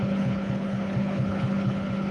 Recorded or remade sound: remade